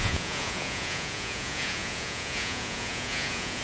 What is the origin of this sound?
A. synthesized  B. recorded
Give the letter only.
A